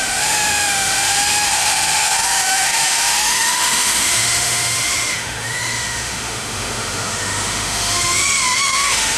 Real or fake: fake